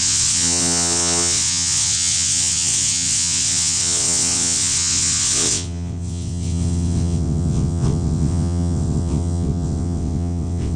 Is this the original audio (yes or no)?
no